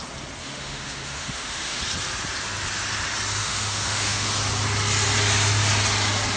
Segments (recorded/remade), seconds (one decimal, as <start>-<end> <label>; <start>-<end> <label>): 0.0-0.4 recorded; 0.4-1.8 remade; 1.8-3.4 recorded; 3.4-4.3 remade; 4.3-6.4 recorded